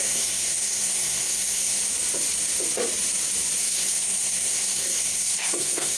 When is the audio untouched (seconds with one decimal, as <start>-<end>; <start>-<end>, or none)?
1.8-3.6